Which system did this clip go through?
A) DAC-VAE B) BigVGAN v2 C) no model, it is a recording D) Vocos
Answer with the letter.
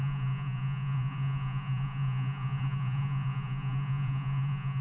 D